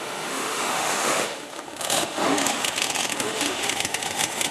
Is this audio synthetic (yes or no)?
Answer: yes